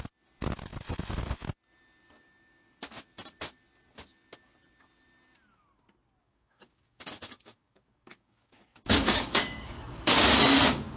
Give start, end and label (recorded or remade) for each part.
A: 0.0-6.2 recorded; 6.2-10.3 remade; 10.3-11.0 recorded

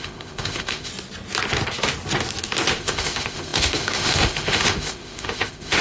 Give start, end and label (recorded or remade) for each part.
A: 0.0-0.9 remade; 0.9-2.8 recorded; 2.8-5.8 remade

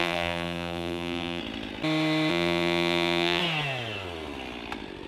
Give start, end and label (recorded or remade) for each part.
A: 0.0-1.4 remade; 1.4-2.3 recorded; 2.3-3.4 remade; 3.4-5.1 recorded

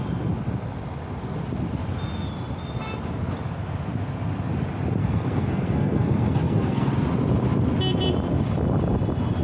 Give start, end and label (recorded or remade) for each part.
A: 0.0-5.0 recorded; 5.0-6.9 remade; 6.9-9.4 recorded

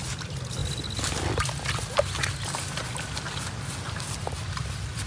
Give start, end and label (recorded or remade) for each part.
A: 0.0-5.1 recorded

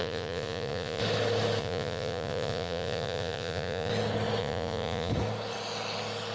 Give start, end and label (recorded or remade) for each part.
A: 0.0-1.0 remade; 1.0-1.6 recorded; 1.6-3.9 remade; 3.9-4.4 recorded; 4.4-5.1 remade; 5.1-6.3 recorded

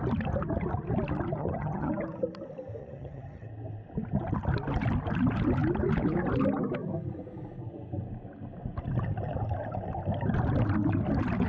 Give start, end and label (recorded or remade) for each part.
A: 0.0-1.4 recorded; 1.4-1.9 remade; 1.9-2.8 recorded; 2.8-3.5 remade; 3.5-11.5 recorded

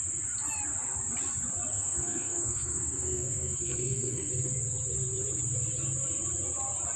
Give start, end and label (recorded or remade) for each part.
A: 0.0-1.7 recorded; 1.7-4.3 remade; 4.3-7.0 recorded